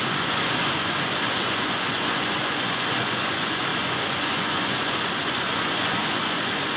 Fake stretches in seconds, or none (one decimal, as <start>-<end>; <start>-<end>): 0.0-6.8